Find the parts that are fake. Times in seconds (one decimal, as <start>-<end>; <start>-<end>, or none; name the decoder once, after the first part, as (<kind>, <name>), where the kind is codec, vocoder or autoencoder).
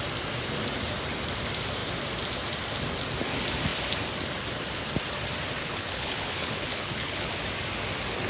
5.6-7.3 (codec, HILCodec)